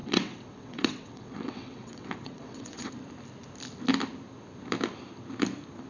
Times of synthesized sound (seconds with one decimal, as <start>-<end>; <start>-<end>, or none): 0.0-2.9